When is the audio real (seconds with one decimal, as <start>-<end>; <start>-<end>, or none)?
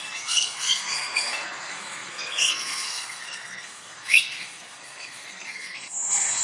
none